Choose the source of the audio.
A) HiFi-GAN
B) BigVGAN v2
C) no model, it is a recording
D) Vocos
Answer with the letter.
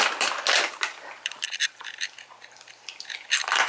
B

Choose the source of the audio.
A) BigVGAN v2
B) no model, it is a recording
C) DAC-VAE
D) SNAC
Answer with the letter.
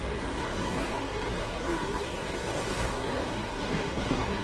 D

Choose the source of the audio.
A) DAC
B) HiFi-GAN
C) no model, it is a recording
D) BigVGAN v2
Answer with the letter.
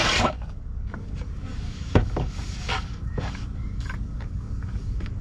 A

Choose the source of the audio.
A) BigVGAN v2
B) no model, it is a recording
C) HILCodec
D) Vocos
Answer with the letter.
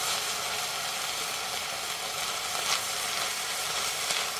B